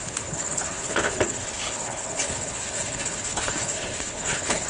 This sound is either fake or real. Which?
fake